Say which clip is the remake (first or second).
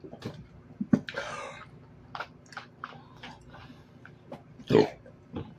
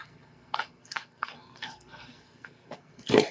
second